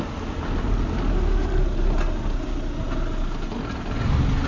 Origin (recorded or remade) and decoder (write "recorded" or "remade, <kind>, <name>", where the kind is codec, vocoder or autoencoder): recorded